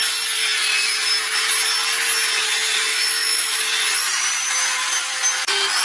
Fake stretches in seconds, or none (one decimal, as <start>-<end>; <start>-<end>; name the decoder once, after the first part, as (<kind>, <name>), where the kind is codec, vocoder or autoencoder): 2.9-3.6 (autoencoder, DAC-VAE)